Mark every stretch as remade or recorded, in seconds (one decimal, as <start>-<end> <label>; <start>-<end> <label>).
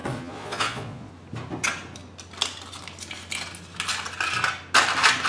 0.0-1.1 remade; 1.1-5.3 recorded